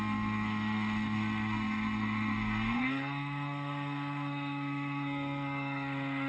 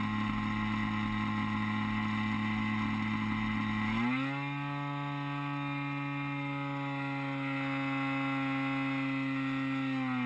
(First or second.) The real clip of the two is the second